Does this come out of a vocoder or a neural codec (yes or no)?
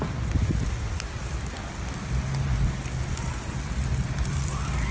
no